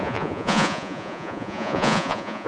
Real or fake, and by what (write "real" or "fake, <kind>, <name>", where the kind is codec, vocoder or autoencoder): fake, vocoder, Vocos